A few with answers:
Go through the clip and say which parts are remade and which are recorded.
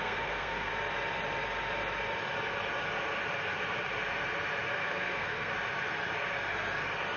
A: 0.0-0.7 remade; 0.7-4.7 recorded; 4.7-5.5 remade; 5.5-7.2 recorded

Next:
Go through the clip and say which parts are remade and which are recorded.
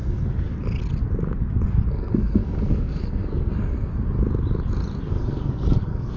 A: 0.0-0.5 remade; 0.5-1.9 recorded; 1.9-3.9 remade; 3.9-5.1 recorded; 5.1-6.2 remade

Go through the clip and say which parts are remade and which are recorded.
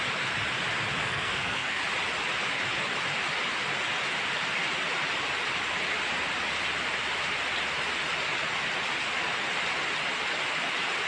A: 0.0-1.0 recorded; 1.0-1.8 remade; 1.8-11.1 recorded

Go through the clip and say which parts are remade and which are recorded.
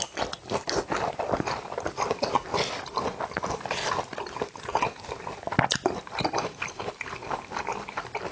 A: 0.0-8.3 recorded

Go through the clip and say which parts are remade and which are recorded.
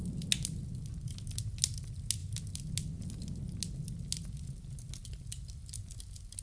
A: 0.0-6.4 recorded